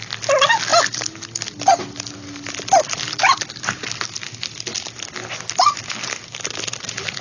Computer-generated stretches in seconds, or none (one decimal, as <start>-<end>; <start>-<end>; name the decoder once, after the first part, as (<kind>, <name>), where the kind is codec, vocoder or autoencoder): none